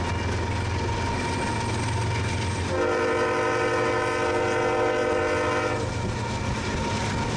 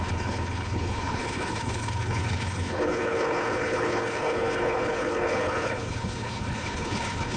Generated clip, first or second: second